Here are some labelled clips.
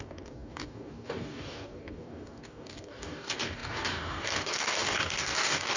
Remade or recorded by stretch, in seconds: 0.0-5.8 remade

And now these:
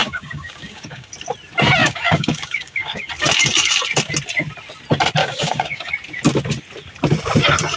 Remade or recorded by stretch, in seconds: 0.0-1.1 remade; 1.1-1.8 recorded; 1.8-3.1 remade; 3.1-5.2 recorded; 5.2-5.9 remade; 5.9-7.8 recorded